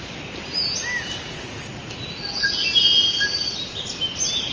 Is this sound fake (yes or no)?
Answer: no